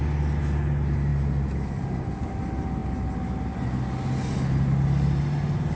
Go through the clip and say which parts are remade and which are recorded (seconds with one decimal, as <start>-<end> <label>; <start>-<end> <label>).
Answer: 0.0-5.8 recorded